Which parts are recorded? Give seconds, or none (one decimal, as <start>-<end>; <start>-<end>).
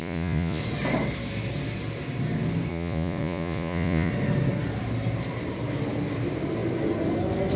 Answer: 0.6-2.7; 4.1-7.6